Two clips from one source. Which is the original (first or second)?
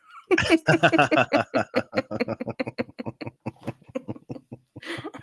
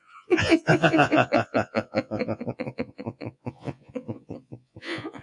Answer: first